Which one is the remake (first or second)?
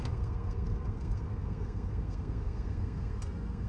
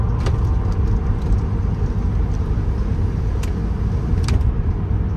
first